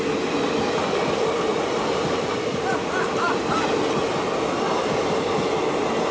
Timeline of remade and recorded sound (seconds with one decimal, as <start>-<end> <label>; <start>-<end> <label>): 0.0-6.1 recorded